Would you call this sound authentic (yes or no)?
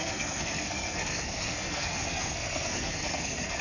no